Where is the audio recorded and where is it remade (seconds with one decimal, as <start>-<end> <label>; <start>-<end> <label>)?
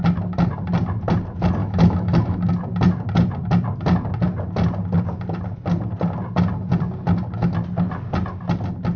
0.0-1.6 recorded; 1.6-2.5 remade; 2.5-9.0 recorded